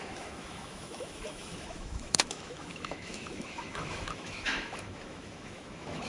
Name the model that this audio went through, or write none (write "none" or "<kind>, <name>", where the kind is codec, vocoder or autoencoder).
autoencoder, DAC-VAE